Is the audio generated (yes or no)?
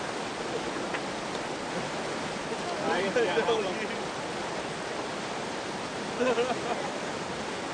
no